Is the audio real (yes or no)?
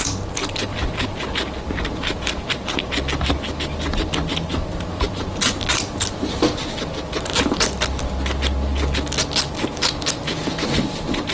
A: yes